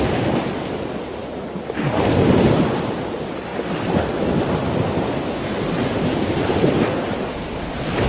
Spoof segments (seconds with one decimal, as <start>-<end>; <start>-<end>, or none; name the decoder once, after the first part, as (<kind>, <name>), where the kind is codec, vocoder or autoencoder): none